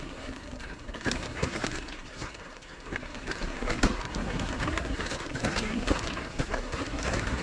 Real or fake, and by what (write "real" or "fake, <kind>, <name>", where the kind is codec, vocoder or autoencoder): fake, codec, SNAC